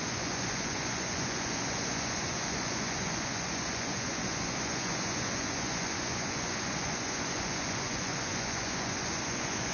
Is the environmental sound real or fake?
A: fake